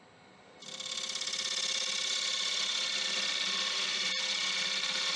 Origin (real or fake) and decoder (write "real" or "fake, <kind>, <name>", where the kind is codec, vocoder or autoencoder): real